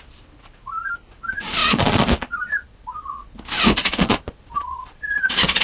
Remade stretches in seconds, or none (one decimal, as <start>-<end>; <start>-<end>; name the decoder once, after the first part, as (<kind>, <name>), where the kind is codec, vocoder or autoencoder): 1.6-3.2 (vocoder, Vocos); 3.8-5.6